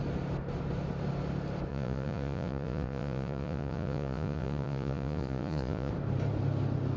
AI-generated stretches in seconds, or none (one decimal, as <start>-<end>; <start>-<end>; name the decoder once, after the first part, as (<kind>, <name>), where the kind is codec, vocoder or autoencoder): 1.7-5.9 (vocoder, Vocos)